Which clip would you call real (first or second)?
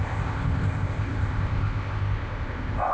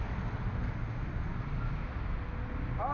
second